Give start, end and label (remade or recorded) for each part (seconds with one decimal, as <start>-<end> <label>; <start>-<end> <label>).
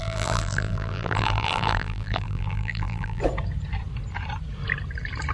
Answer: 0.0-3.2 remade; 3.2-5.3 recorded